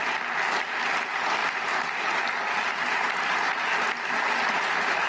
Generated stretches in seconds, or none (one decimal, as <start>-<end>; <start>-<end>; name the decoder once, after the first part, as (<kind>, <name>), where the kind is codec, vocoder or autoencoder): none